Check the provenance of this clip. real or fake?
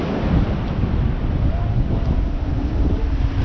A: fake